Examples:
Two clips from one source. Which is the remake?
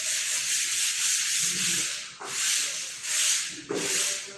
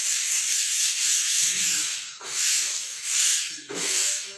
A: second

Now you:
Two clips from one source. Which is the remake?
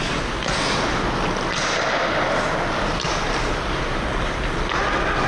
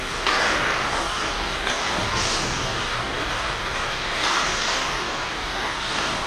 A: second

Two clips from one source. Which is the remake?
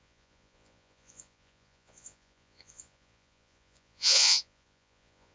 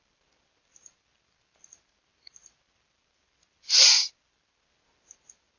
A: first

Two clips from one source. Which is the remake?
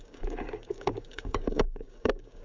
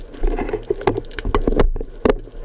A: first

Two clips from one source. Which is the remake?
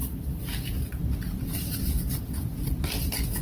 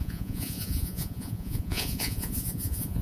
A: second